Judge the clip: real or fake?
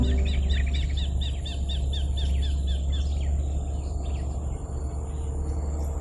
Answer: real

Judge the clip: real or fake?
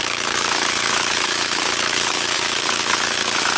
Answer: fake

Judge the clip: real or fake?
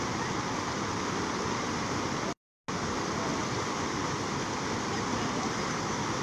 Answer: real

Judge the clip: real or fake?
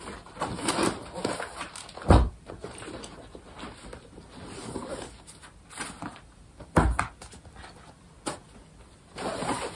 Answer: real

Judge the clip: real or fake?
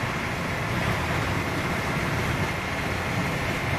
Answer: real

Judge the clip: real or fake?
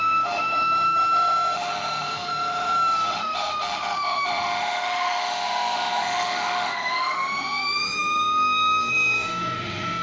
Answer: fake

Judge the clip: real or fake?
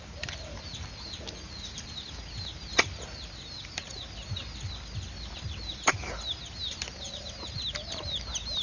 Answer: real